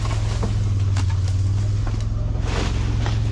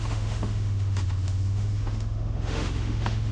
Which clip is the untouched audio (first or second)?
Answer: first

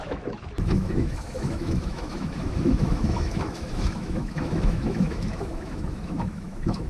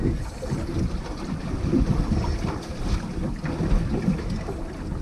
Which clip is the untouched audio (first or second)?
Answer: second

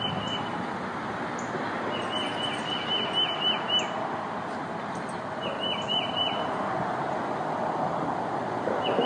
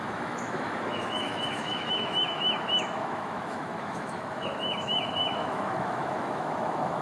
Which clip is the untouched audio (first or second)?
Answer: first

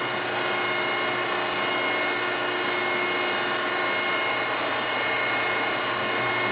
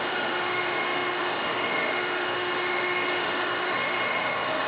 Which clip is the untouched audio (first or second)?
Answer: first